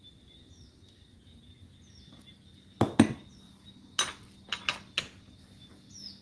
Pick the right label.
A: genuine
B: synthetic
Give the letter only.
A